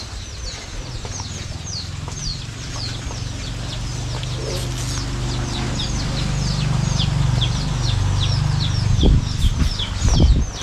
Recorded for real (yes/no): yes